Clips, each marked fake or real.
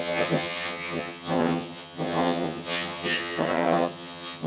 fake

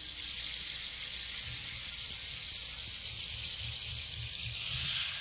real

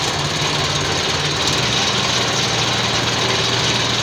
real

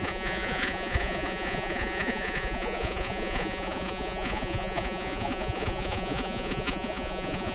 fake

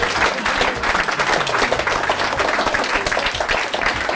real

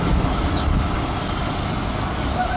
real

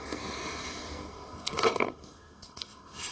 fake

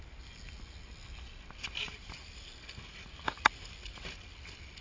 real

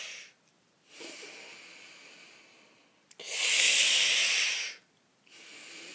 real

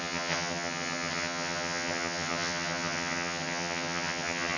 fake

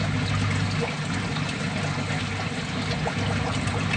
real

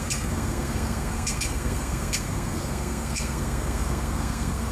fake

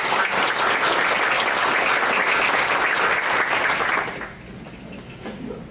real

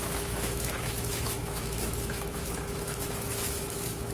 fake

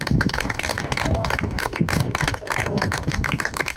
fake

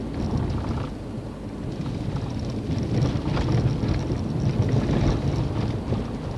real